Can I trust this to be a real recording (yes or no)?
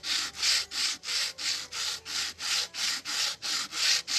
yes